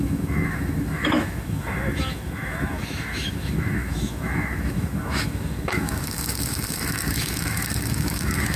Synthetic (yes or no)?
yes